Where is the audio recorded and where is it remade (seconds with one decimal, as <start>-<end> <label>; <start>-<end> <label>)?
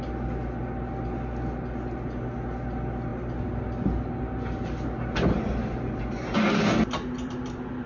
0.0-7.9 recorded